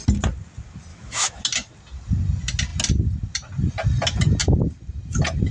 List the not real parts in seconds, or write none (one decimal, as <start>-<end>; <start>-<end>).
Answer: 0.9-1.4